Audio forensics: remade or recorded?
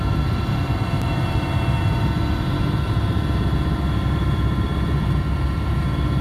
remade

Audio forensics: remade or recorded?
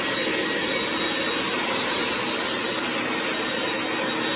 recorded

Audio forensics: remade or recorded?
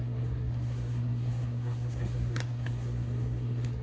remade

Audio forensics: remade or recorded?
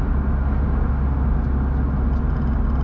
recorded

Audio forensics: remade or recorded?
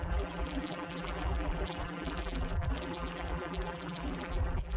remade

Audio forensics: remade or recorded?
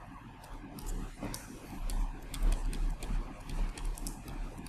recorded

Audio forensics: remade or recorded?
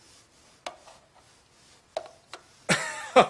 recorded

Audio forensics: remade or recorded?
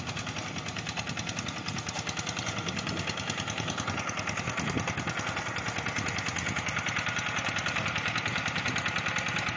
recorded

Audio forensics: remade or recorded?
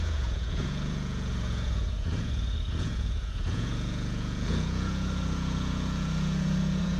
remade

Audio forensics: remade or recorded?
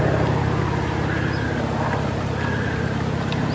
recorded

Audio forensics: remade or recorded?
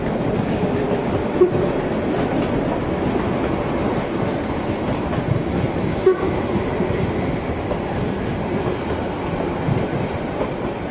recorded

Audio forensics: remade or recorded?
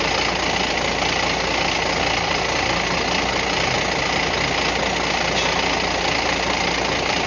recorded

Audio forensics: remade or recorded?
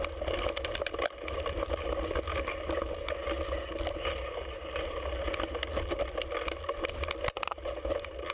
recorded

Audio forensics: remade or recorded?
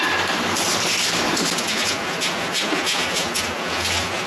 recorded